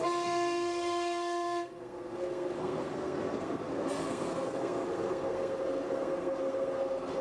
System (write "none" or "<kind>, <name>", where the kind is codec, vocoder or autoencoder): codec, SNAC